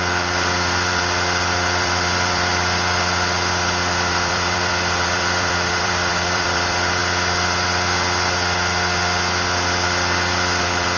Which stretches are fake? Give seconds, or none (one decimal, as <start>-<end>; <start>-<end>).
0.0-7.0; 10.6-11.0